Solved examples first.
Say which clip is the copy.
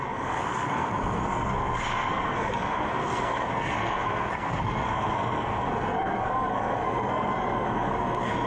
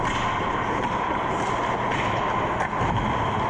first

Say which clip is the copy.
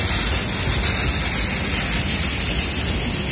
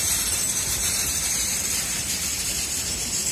second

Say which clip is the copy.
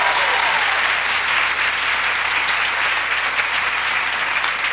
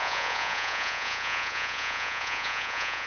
second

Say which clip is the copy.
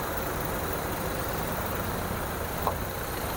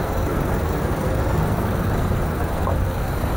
second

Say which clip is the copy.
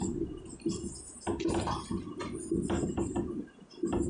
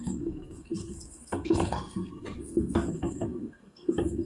second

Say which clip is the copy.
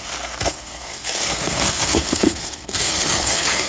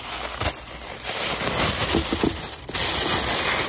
first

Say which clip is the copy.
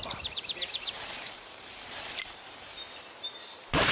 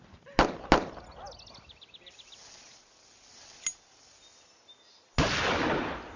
first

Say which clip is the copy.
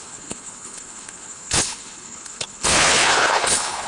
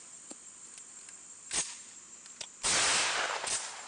first